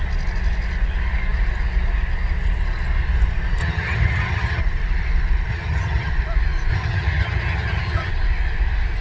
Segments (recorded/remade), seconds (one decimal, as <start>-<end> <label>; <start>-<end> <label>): 0.0-3.6 recorded; 3.6-4.6 remade; 4.6-5.5 recorded; 5.5-6.1 remade; 6.1-6.7 recorded; 6.7-8.1 remade; 8.1-9.0 recorded